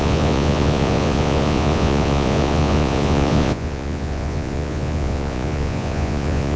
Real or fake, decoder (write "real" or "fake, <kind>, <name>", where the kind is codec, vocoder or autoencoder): fake, vocoder, Vocos